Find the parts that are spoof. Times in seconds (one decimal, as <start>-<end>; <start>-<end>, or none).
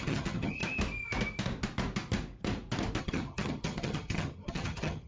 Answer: 0.0-0.6; 3.0-5.1